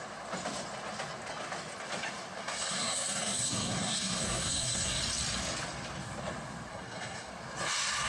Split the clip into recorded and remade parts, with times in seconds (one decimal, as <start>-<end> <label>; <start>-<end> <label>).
0.0-2.4 recorded; 2.4-5.0 remade; 5.0-6.7 recorded; 6.7-7.3 remade; 7.3-8.1 recorded